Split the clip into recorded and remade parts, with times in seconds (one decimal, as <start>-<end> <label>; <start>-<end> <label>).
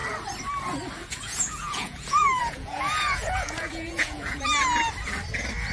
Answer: 0.0-1.0 recorded; 1.0-4.4 remade; 4.4-5.7 recorded